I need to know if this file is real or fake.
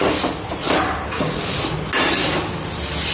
real